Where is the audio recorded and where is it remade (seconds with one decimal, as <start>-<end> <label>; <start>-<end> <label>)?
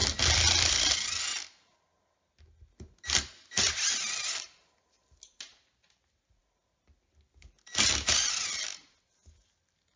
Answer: 0.0-10.0 recorded